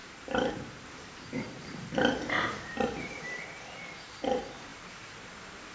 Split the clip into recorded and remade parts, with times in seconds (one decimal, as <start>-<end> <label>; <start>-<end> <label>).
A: 0.0-4.7 remade; 4.7-5.7 recorded